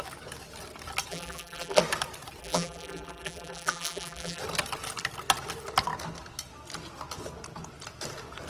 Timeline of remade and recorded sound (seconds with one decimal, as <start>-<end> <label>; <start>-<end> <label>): 0.0-1.1 recorded; 1.1-1.8 remade; 1.8-2.4 recorded; 2.4-4.4 remade; 4.4-8.5 recorded